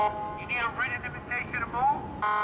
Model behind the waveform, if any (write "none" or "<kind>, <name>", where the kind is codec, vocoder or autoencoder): none